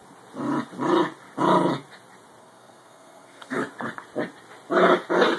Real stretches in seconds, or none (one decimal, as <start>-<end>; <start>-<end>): 0.0-2.4; 3.6-5.4